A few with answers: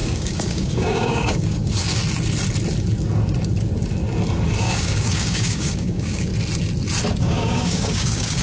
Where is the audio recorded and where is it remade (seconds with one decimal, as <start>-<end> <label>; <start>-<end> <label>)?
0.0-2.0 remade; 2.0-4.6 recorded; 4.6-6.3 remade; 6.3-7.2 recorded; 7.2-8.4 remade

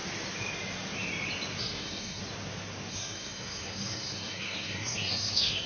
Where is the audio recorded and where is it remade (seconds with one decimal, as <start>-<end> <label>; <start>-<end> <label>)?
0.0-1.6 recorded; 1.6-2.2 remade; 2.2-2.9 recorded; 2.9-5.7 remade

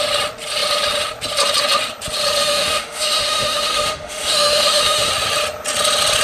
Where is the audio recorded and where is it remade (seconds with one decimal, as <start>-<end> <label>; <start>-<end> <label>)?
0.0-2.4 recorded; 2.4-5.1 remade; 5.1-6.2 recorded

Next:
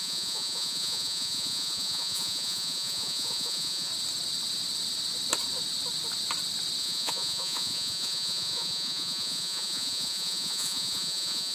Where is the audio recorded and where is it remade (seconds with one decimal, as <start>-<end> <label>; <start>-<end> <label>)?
0.0-3.9 remade; 3.9-6.8 recorded; 6.8-11.5 remade

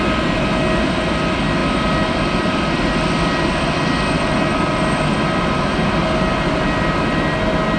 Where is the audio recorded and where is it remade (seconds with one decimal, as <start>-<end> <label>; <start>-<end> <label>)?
0.0-7.8 recorded